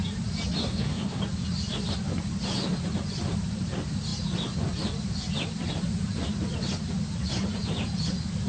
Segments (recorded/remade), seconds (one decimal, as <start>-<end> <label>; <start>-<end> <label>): 0.0-0.6 recorded; 0.6-1.2 remade; 1.2-8.5 recorded